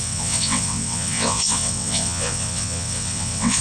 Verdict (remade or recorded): remade